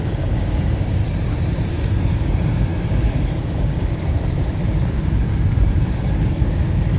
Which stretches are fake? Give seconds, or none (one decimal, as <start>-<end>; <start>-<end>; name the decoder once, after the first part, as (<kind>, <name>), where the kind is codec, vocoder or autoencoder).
0.0-1.0 (codec, DAC); 1.7-5.3; 6.1-7.0

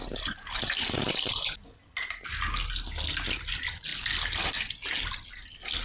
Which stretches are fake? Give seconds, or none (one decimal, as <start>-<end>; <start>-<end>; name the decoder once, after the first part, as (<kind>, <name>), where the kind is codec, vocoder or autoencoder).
none